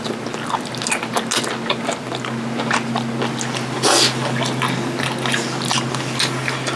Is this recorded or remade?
recorded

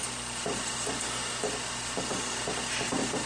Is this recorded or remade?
recorded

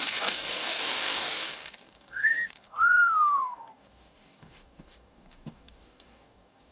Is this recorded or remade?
remade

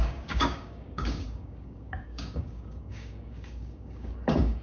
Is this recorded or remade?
remade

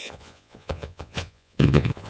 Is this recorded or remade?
remade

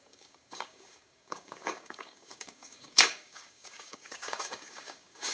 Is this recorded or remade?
remade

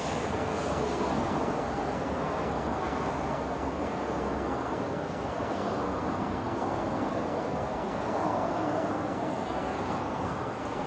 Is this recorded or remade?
remade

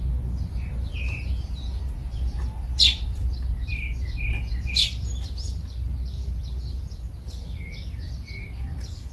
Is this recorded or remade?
recorded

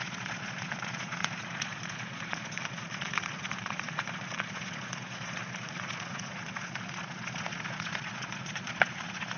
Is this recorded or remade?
remade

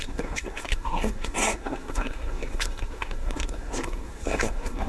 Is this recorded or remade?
remade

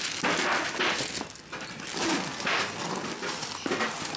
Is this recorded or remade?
recorded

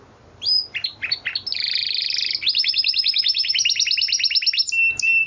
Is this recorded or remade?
recorded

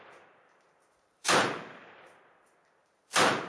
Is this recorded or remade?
remade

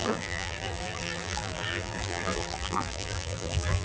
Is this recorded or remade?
remade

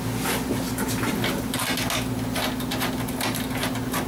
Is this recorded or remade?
recorded